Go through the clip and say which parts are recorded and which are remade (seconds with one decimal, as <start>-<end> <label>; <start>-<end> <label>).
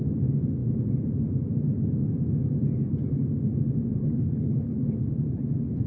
0.0-4.0 recorded; 4.0-4.9 remade; 4.9-5.9 recorded